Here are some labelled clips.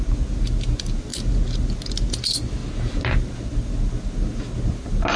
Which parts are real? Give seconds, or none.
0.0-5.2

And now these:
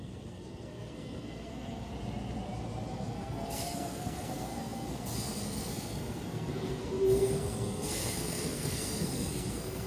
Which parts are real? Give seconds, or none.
1.9-2.9

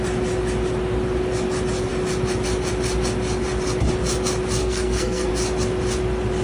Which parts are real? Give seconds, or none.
0.0-4.6; 5.3-6.4

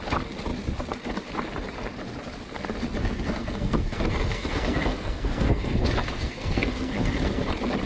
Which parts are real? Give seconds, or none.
0.0-3.0; 7.5-7.9